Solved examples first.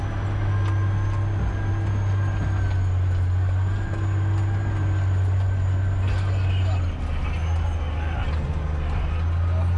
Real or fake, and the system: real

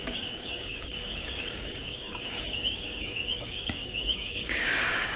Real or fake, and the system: fake, codec, DAC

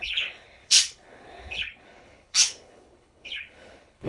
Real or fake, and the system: fake, codec, HILCodec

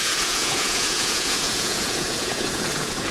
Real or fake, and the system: fake, vocoder, Vocos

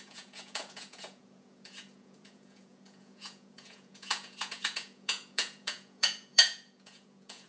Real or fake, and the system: fake, vocoder, Vocos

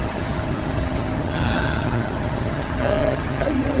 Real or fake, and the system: fake, vocoder, HiFi-GAN